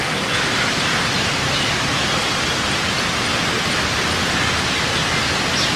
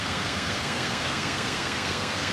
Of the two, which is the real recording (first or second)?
first